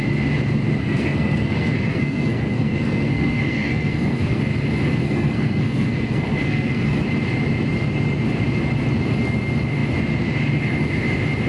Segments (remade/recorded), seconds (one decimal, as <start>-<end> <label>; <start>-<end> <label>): 0.0-0.8 recorded; 0.8-4.4 remade; 4.4-5.0 recorded; 5.0-7.0 remade; 7.0-11.5 recorded